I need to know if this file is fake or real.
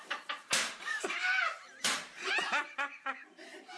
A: fake